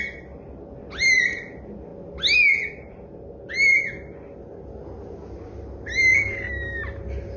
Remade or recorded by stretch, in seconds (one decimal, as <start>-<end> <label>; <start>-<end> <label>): 0.0-7.4 recorded